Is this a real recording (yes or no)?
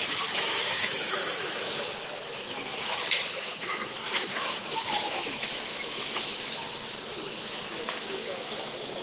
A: no